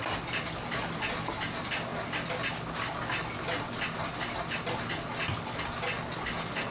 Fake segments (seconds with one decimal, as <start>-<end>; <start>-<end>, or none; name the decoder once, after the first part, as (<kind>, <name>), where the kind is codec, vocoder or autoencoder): none

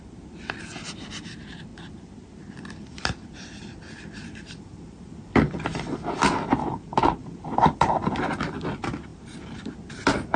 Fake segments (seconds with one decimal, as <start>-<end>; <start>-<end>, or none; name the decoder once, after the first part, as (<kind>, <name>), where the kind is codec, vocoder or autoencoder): 1.7-4.6 (vocoder, BigVGAN v2); 7.2-8.1; 9.1-9.7